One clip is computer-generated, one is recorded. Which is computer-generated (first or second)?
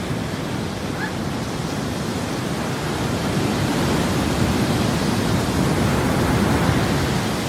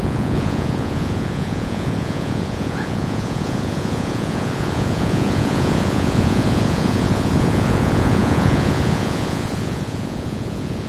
second